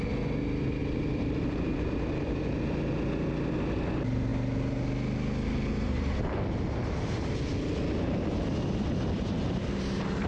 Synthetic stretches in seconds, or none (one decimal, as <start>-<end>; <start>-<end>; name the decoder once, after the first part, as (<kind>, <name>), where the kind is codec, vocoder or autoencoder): 0.8-2.4 (vocoder, BigVGAN v2)